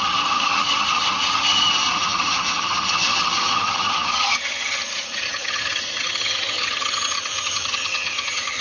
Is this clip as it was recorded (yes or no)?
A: no